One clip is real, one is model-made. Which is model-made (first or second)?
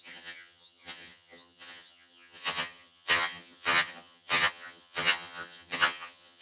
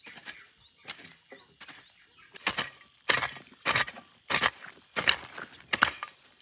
first